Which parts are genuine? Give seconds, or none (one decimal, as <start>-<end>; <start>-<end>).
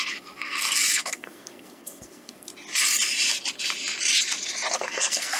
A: 2.5-4.7